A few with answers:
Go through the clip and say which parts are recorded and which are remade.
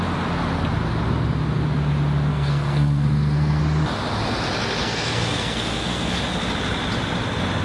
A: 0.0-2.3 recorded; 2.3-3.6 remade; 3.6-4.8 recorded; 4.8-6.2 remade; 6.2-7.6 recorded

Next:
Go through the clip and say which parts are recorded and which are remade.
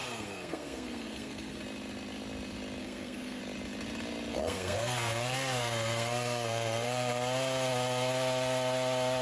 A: 0.0-1.6 remade; 1.6-2.8 recorded; 2.8-3.4 remade; 3.4-4.3 recorded; 4.3-7.2 remade; 7.2-9.2 recorded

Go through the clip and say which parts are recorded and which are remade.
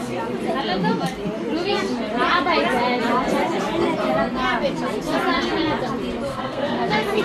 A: 0.0-6.3 recorded; 6.3-7.2 remade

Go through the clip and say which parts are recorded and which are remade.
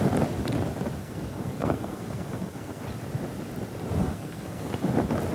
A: 0.0-1.0 recorded; 1.0-2.8 remade; 2.8-4.0 recorded; 4.0-4.7 remade; 4.7-5.3 recorded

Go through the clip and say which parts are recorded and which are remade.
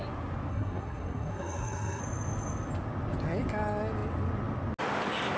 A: 0.0-0.5 recorded; 0.5-2.0 remade; 2.0-5.4 recorded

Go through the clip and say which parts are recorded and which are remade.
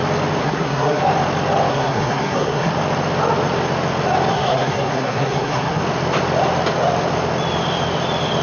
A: 0.0-0.4 recorded; 0.4-1.0 remade; 1.0-1.7 recorded; 1.7-2.7 remade; 2.7-4.3 recorded; 4.3-5.8 remade; 5.8-8.4 recorded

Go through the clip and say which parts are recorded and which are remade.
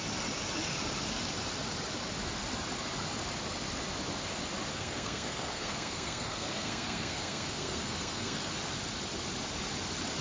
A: 0.0-4.7 recorded; 4.7-8.5 remade; 8.5-10.2 recorded